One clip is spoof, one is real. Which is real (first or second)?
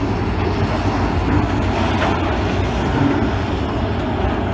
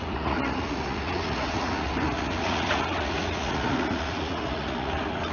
first